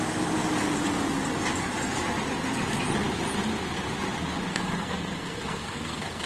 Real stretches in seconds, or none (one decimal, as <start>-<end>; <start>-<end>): 0.0-4.5